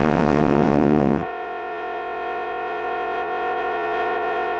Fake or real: fake